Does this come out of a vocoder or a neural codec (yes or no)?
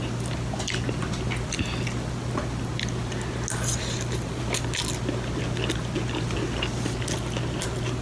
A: no